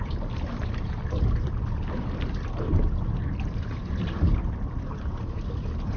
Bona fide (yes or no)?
yes